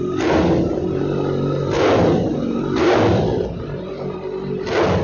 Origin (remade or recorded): recorded